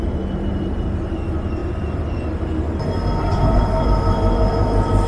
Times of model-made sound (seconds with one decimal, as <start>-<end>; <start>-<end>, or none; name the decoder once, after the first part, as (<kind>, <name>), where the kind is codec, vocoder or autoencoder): 0.0-1.6 (vocoder, BigVGAN v2); 3.5-5.1